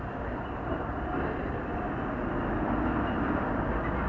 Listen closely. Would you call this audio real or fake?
real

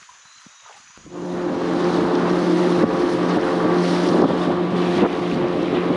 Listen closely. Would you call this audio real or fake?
real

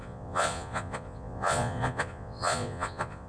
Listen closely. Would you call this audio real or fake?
fake